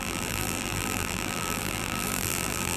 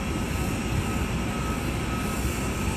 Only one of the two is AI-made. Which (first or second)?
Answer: first